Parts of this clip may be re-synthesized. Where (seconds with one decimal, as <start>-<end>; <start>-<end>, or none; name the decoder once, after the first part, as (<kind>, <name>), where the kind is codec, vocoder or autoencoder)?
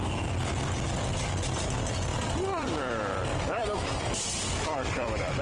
2.1-5.4 (vocoder, BigVGAN v2)